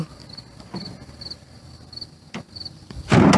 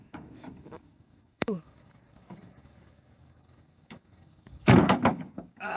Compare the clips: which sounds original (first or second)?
first